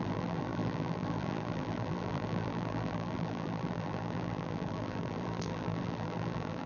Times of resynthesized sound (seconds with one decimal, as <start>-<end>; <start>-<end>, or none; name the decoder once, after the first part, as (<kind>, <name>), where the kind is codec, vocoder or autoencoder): 0.0-6.7 (vocoder, BigVGAN v2)